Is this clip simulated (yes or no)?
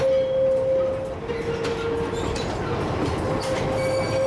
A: no